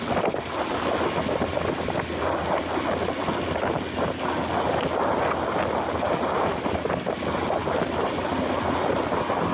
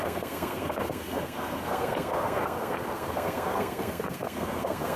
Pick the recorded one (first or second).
first